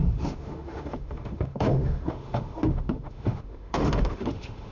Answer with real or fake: fake